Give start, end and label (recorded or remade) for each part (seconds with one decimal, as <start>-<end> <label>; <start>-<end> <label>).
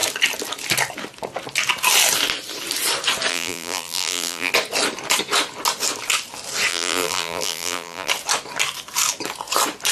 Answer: 0.0-3.3 recorded; 3.3-4.5 remade; 4.5-6.7 recorded; 6.7-8.1 remade; 8.1-9.9 recorded